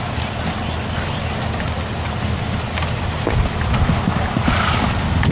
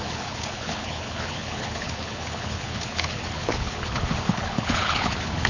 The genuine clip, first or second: first